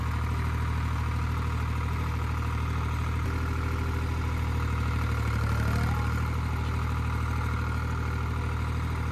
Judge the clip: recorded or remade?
recorded